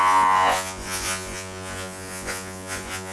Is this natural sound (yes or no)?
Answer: no